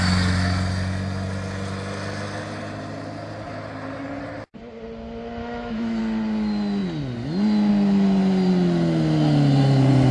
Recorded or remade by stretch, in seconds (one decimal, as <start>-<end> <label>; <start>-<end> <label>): 0.0-5.4 recorded; 5.4-6.0 remade; 6.0-10.1 recorded